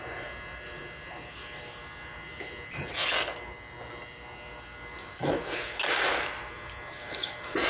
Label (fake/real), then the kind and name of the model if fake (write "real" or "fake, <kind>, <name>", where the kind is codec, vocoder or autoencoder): real